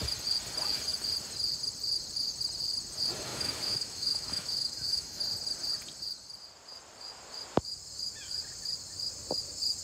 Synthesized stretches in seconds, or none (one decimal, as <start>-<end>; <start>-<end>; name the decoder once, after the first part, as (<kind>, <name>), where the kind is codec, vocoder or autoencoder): 3.3-5.2 (autoencoder, DAC-VAE)